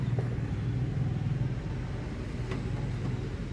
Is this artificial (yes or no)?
no